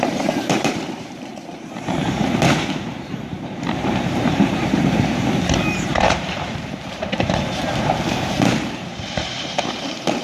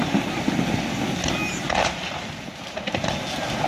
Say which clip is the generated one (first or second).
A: first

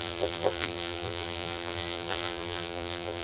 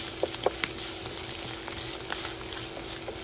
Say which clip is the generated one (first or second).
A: first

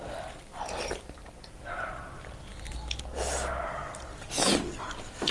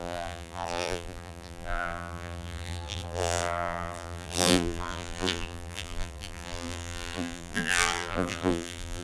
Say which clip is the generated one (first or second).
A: second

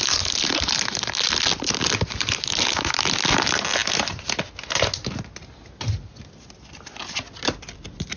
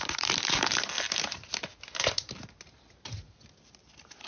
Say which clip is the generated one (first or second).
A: second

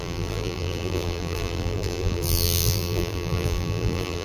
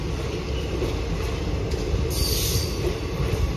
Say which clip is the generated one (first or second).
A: first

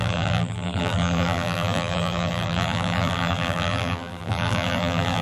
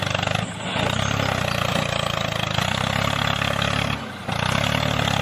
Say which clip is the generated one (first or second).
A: first